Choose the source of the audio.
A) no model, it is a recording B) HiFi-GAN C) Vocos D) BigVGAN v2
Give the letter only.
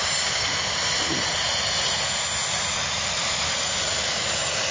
A